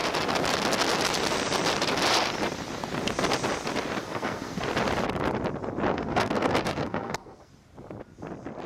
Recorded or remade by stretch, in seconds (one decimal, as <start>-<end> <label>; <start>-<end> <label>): 0.0-4.0 recorded; 4.0-4.6 remade; 4.6-5.9 recorded; 5.9-7.5 remade; 7.5-8.7 recorded